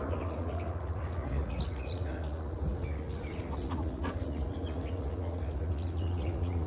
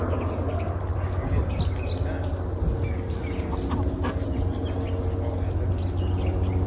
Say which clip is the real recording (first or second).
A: second